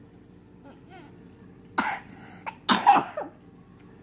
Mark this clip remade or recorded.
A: recorded